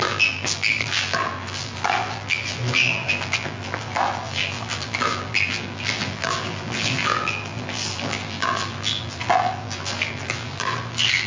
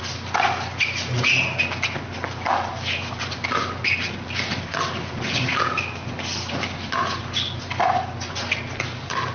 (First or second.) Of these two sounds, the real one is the second